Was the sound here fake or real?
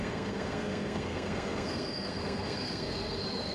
fake